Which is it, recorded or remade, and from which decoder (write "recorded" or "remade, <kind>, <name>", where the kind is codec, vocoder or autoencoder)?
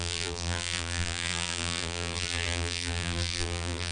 remade, vocoder, BigVGAN v2